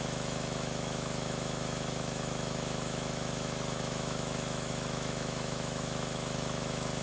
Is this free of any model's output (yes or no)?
no